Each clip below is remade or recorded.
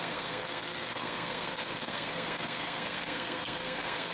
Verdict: remade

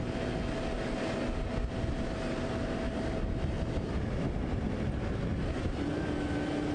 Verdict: recorded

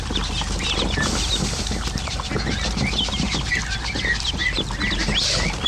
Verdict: recorded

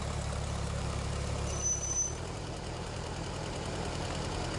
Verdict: remade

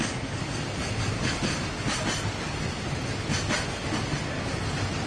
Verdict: recorded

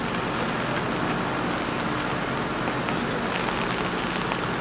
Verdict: recorded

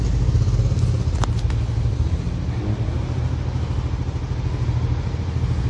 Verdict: recorded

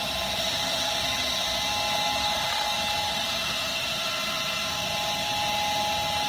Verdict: recorded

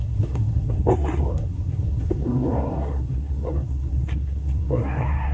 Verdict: remade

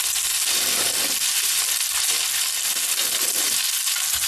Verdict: recorded